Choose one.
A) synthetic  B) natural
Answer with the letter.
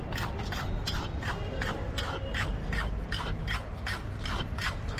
B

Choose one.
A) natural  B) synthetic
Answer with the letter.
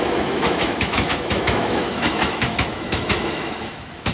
B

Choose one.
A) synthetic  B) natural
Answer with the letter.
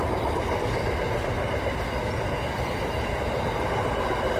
B